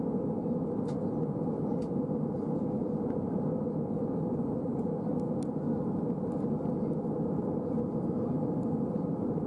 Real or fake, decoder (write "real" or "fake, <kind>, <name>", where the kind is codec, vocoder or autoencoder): real